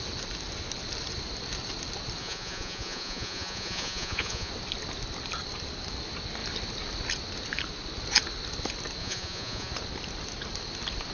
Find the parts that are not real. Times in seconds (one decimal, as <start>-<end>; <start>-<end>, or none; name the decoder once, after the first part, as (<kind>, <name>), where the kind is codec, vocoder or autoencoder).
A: 2.2-4.5 (vocoder, Vocos); 9.0-9.7